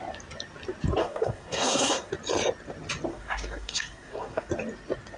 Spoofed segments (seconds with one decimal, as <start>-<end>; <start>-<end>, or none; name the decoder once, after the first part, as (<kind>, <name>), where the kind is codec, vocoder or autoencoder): 1.0-2.1 (codec, SNAC); 3.1-4.5